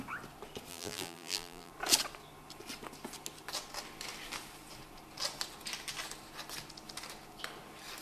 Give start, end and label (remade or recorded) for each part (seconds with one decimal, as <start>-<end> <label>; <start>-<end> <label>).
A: 0.0-0.7 recorded; 0.7-1.7 remade; 1.7-8.0 recorded